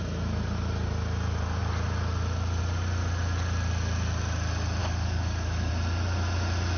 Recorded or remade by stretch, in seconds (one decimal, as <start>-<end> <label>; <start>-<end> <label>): 0.0-4.8 recorded; 4.8-5.7 remade; 5.7-6.8 recorded